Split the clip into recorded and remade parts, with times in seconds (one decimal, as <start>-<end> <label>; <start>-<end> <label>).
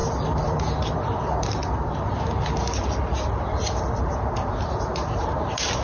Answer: 0.0-2.2 remade; 2.2-2.8 recorded; 2.8-4.0 remade; 4.0-5.8 recorded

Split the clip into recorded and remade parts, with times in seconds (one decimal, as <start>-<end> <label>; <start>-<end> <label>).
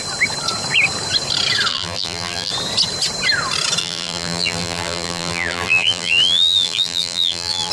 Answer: 0.0-1.7 recorded; 1.7-2.5 remade; 2.5-3.8 recorded; 3.8-7.7 remade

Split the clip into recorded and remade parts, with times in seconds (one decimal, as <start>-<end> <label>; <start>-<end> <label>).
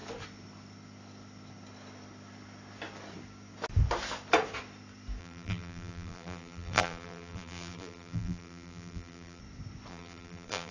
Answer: 0.0-5.2 recorded; 5.2-9.4 remade; 9.4-9.9 recorded; 9.9-10.7 remade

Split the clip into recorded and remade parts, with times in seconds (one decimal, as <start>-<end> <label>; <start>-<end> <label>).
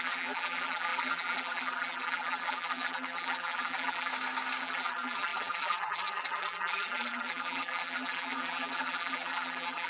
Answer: 0.0-4.1 remade; 4.1-4.6 recorded; 4.6-9.9 remade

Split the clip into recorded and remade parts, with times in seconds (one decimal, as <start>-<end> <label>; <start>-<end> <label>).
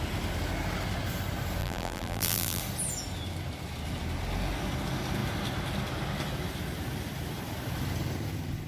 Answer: 0.0-1.6 recorded; 1.6-2.6 remade; 2.6-8.7 recorded